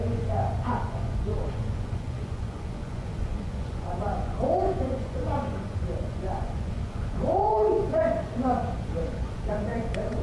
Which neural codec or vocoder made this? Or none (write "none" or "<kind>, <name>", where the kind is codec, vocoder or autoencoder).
vocoder, Vocos